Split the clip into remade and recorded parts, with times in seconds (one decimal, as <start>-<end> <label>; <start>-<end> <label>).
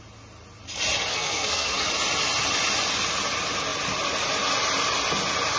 0.0-1.1 recorded; 1.1-1.9 remade; 1.9-5.6 recorded